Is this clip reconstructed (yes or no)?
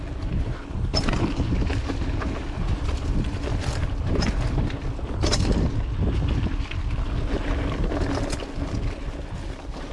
no